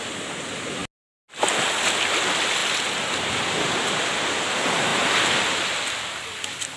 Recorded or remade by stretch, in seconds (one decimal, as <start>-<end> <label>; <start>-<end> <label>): 0.0-6.8 recorded

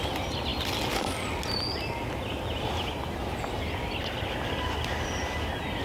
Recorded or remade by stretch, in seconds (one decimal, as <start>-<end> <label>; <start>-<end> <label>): 0.0-5.8 recorded

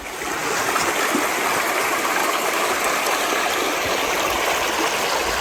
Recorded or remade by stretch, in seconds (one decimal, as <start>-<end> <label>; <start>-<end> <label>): 0.0-2.2 recorded; 2.2-2.8 remade; 2.8-5.4 recorded

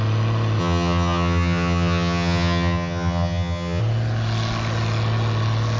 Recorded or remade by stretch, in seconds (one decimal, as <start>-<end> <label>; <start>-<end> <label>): 0.0-0.6 recorded; 0.6-3.8 remade; 3.8-5.8 recorded

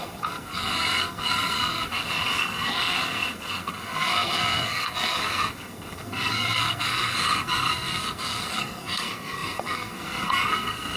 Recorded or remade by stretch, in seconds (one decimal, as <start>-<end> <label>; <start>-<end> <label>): 0.0-11.0 remade